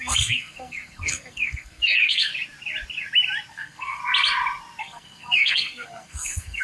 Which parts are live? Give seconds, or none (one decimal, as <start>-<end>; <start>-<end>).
2.3-3.5; 4.0-4.8